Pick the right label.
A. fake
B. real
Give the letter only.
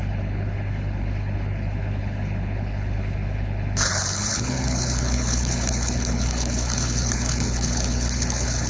A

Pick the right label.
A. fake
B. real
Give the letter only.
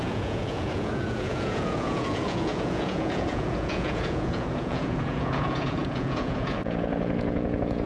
A